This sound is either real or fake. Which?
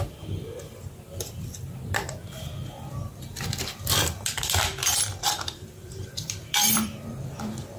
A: fake